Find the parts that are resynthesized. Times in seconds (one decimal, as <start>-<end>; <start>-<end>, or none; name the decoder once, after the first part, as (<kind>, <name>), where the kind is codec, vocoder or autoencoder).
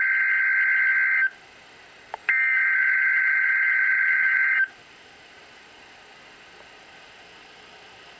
2.2-4.7 (vocoder, BigVGAN v2)